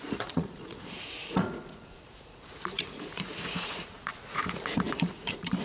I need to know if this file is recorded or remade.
remade